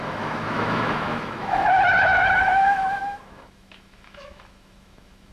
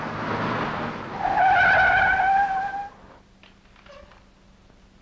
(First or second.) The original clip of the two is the second